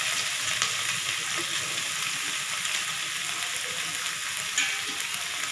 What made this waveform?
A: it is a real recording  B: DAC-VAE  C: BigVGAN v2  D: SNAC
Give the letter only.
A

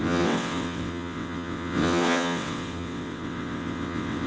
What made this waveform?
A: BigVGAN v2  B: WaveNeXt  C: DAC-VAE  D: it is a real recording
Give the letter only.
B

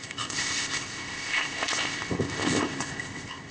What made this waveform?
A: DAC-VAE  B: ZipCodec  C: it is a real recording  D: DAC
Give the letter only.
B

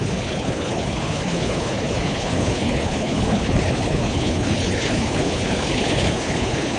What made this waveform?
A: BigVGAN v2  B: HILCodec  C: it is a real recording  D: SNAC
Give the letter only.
B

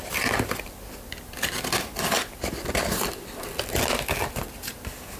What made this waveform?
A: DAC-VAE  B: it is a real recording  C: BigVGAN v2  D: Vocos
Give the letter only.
B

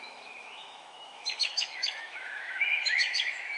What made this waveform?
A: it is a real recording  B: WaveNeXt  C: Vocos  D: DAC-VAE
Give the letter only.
D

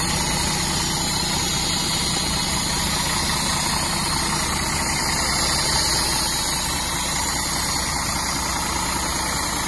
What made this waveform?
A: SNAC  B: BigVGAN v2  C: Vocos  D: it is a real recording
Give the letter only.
D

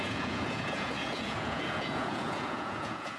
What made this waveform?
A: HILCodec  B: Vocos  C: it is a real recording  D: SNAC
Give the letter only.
B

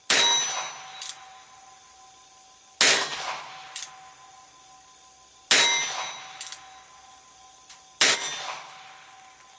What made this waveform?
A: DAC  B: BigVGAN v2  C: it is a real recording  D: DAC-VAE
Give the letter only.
C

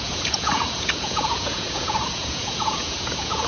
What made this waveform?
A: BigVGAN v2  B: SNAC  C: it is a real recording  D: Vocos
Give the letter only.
D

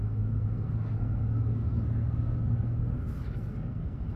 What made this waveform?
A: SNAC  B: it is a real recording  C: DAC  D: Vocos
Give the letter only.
A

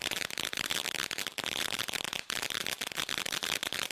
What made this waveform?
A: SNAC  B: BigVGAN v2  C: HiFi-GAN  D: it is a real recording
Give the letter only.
B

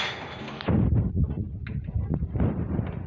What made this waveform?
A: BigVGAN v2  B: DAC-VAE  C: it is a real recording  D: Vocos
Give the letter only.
C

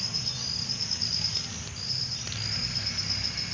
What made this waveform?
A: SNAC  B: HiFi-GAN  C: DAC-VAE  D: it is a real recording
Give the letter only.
D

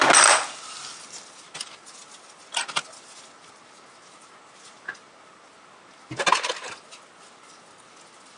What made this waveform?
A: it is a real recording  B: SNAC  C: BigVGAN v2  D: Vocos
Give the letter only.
A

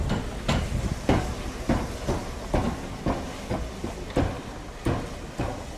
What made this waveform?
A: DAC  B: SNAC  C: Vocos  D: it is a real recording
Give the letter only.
D